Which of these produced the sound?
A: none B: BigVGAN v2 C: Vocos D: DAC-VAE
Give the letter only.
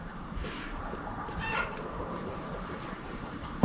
B